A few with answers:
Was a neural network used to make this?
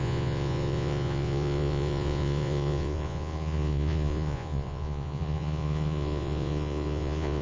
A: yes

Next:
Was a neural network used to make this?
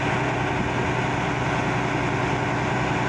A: no